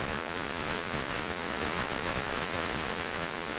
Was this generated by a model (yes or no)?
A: yes